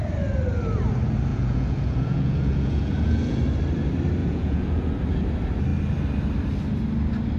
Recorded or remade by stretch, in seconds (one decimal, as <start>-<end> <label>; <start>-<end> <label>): 0.0-1.3 recorded; 1.3-3.4 remade; 3.4-4.2 recorded; 4.2-4.9 remade; 4.9-7.4 recorded